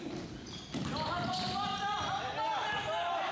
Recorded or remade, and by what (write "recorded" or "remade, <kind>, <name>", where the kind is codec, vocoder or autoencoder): recorded